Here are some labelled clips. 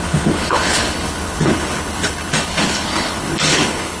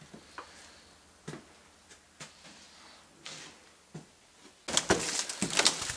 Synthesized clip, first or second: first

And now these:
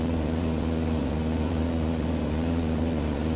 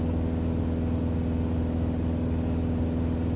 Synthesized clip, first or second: first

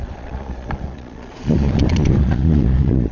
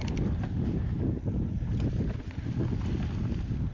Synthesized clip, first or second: first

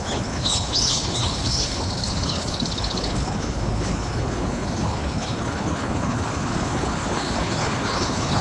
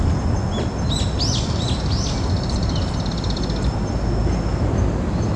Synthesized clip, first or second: first